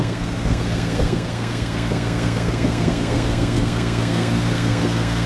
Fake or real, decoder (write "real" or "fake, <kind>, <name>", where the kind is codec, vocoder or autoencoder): fake, codec, SNAC